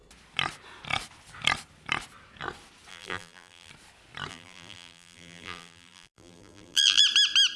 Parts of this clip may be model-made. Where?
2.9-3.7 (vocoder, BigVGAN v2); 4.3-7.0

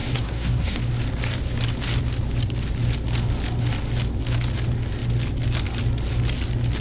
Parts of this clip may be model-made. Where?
0.0-0.8 (codec, SNAC)

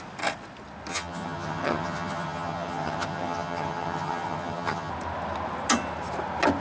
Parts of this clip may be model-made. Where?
0.9-4.9 (vocoder, HiFi-GAN)

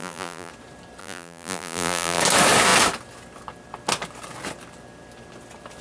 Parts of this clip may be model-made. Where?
0.0-0.5 (vocoder, BigVGAN v2); 1.0-2.2